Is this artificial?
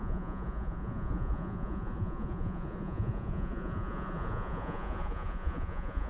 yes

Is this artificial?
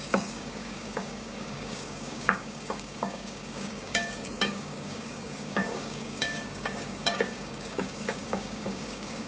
yes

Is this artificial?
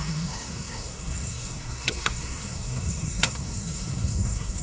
yes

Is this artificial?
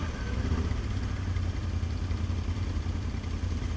no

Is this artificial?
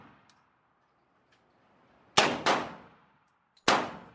no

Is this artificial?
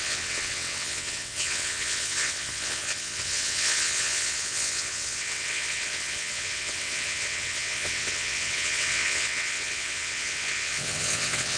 yes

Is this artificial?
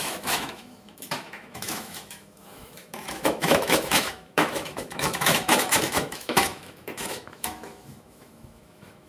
yes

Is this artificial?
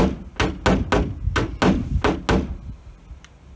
no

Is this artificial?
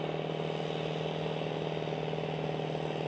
no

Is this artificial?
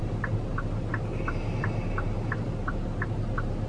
no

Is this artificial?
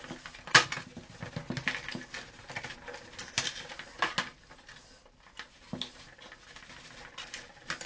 no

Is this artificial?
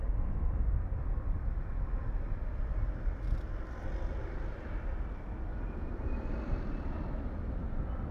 no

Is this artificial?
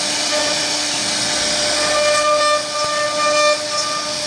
no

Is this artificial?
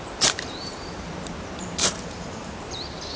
yes